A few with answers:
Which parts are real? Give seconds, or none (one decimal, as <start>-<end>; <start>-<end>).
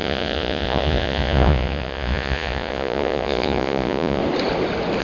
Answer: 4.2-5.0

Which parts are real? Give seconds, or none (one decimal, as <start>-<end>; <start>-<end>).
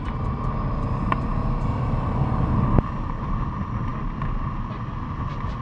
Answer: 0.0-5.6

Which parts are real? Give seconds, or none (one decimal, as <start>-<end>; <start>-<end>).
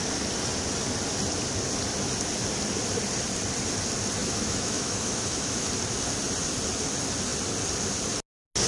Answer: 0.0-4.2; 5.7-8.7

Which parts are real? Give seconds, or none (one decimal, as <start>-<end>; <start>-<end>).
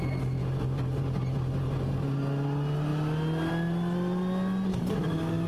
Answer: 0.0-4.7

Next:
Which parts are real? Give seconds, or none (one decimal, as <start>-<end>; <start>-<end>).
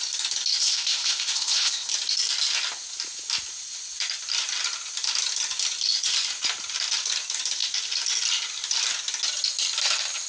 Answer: 0.0-0.6; 1.9-10.3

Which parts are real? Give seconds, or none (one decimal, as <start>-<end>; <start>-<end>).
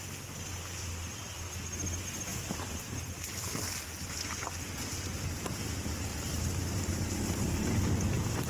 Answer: 0.0-6.1; 7.2-8.5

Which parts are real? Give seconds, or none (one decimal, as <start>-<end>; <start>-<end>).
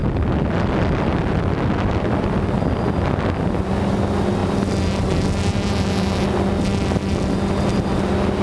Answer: 0.0-8.4